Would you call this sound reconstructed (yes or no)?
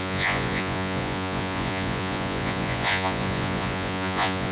yes